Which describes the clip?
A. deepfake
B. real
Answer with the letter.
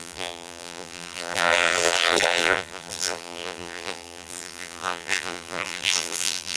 A